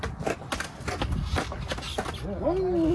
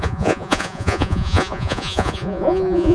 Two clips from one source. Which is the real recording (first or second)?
first